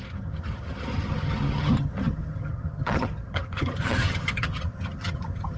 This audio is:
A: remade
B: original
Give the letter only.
A